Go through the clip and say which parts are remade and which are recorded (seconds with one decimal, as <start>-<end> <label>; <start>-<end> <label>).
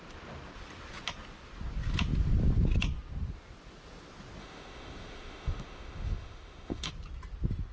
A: 0.0-4.4 recorded; 4.4-6.9 remade; 6.9-7.7 recorded